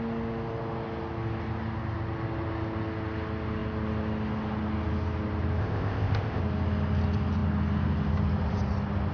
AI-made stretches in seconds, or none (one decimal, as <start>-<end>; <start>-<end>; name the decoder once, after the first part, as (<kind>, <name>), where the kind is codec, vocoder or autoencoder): 5.6-6.4 (codec, ZipCodec)